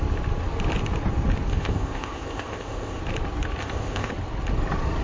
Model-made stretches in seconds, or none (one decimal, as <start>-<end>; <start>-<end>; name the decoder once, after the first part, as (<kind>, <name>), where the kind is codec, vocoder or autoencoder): 1.5-3.0 (codec, ZipCodec); 3.6-4.1